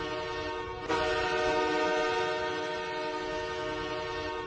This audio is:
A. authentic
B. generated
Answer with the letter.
A